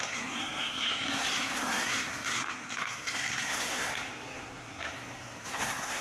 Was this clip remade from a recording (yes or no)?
yes